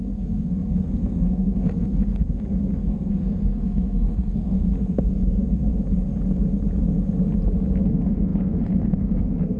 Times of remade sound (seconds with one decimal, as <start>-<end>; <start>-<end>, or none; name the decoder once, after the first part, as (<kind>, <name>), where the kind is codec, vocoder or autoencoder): 0.0-5.7 (codec, SNAC); 7.9-9.6